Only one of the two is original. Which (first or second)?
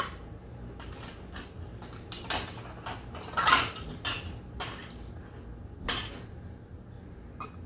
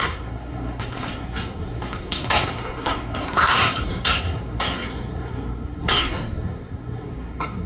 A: first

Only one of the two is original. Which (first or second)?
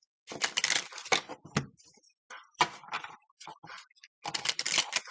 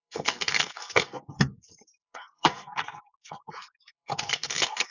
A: first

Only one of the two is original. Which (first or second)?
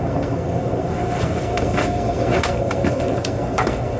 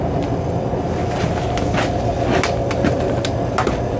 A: second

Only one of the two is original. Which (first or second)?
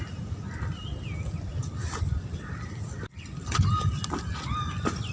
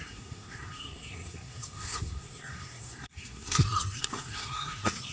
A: first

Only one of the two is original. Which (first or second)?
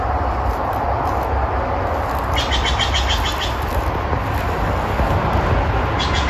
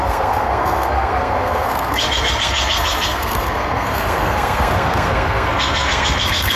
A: first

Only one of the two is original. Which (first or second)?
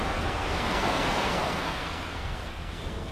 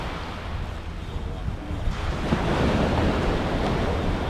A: second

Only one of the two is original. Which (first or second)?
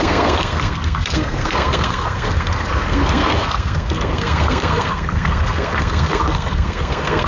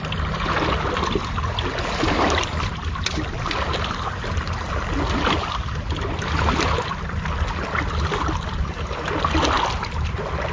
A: second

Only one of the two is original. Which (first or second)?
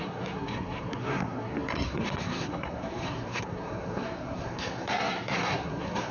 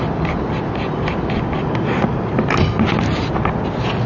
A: second